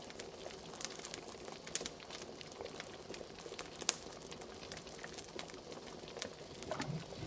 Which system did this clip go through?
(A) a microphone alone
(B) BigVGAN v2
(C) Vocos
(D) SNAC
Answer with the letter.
A